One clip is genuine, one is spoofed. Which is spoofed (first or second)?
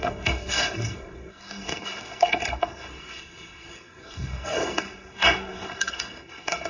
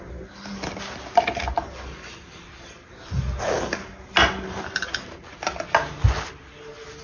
first